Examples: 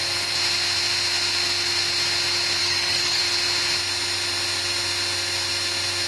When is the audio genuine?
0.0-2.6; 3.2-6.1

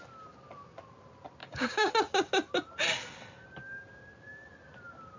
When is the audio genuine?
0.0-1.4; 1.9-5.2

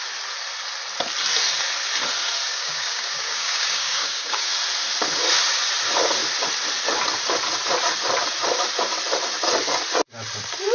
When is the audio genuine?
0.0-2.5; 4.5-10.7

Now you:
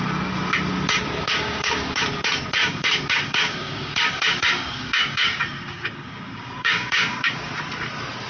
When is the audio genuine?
0.0-1.3; 2.0-2.6; 7.5-8.3